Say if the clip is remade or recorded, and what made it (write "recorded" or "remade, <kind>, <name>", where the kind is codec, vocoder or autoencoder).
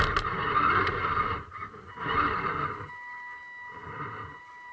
recorded